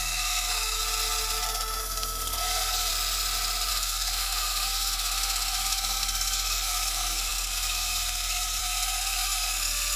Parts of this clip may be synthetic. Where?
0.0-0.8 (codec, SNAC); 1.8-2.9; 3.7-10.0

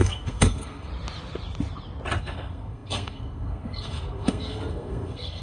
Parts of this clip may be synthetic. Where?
0.0-0.9 (codec, SNAC); 2.2-5.4

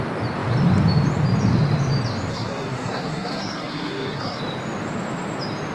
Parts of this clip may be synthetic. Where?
2.3-4.4 (codec, SNAC)

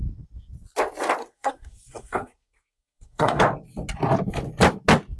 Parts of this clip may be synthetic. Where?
1.2-3.4 (codec, SNAC)

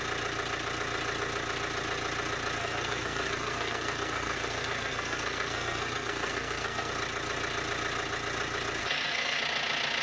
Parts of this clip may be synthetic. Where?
2.6-6.9 (codec, SNAC); 8.8-9.4

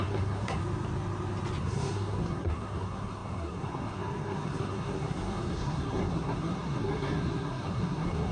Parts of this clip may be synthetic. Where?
0.0-0.6 (codec, SNAC); 1.6-8.3